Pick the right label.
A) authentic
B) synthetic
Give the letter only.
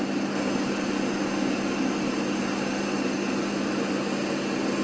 A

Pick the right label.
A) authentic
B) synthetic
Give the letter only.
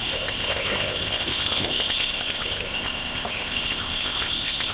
B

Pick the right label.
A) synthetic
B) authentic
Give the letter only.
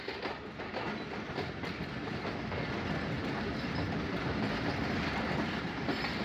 B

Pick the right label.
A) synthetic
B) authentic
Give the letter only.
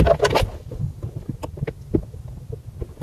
B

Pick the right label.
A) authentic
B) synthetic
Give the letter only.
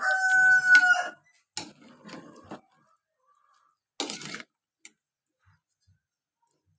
A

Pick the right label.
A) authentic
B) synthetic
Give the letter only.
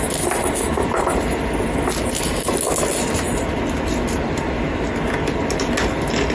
A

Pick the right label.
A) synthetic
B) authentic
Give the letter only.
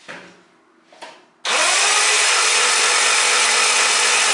B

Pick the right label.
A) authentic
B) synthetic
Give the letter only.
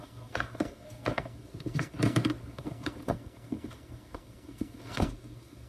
B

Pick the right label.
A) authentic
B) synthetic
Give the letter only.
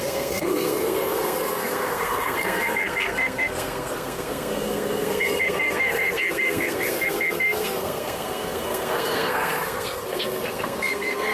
B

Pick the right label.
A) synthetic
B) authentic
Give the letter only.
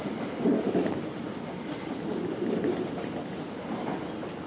B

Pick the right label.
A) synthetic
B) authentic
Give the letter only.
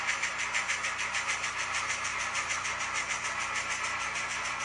B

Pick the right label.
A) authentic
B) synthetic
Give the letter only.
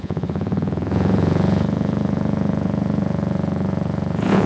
B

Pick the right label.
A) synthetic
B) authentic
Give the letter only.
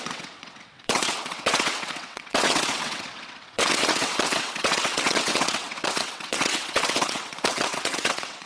A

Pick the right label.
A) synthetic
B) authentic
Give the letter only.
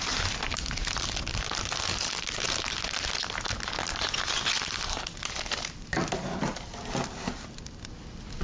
B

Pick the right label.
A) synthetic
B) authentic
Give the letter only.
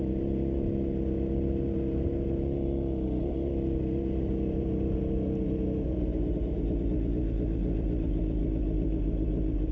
B